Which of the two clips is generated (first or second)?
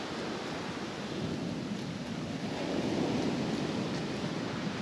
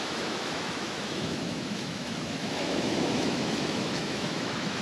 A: second